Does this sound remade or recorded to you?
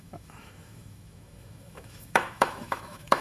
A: remade